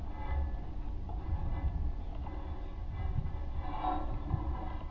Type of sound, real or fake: real